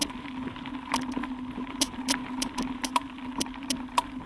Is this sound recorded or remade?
remade